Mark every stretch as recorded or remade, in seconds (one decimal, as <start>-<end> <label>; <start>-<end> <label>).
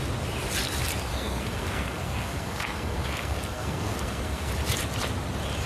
0.0-1.1 recorded; 1.1-4.5 remade; 4.5-5.7 recorded